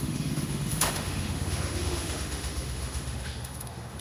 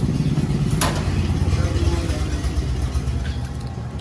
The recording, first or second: second